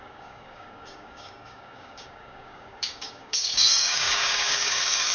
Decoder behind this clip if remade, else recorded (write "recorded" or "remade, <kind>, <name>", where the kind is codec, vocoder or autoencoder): remade, codec, DAC